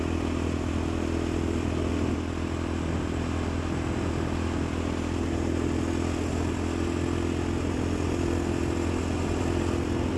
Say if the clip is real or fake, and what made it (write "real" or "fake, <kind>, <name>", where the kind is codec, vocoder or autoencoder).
real